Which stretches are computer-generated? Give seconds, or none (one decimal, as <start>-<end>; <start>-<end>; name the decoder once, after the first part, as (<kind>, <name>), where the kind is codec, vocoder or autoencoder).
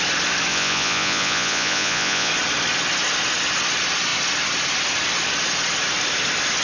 0.5-2.3 (vocoder, Vocos)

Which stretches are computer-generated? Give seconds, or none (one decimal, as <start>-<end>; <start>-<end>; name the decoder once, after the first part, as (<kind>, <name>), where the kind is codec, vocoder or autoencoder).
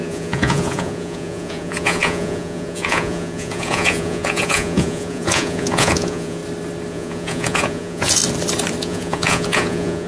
0.0-6.4 (vocoder, Vocos); 6.9-8.2; 8.8-10.1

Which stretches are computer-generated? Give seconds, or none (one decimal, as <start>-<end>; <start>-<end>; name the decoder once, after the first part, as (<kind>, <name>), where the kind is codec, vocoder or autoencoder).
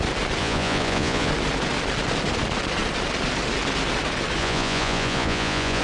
0.4-1.3 (vocoder, Vocos); 4.4-5.8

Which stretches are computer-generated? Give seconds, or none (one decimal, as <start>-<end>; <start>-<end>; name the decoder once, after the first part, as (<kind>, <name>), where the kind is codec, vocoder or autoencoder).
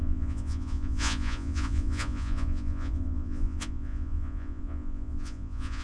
0.0-5.8 (vocoder, Vocos)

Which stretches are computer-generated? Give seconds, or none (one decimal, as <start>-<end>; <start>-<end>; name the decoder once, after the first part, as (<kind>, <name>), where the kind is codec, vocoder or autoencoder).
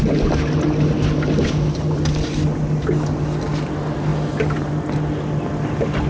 none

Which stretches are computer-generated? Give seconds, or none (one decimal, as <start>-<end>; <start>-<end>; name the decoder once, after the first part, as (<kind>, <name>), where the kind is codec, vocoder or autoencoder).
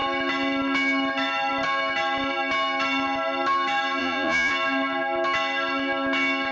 4.0-4.5 (vocoder, Vocos)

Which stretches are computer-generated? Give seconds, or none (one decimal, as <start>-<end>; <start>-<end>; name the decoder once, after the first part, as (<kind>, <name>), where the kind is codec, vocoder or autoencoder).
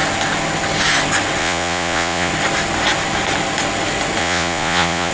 1.4-2.3 (vocoder, Vocos); 4.2-5.1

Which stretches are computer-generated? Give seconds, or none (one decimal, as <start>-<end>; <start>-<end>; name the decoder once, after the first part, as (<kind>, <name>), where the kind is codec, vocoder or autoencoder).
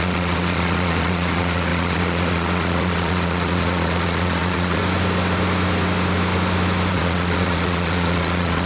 0.0-4.8 (vocoder, Vocos); 6.9-8.7